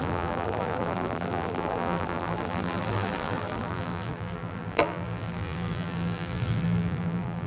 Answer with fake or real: fake